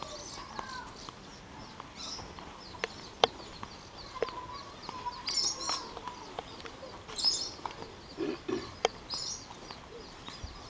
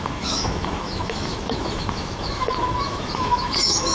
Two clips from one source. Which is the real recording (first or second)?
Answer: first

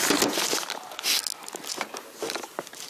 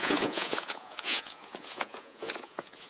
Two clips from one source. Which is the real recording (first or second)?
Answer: first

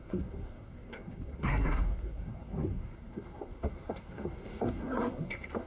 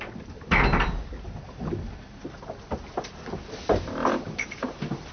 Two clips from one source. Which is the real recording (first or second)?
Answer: second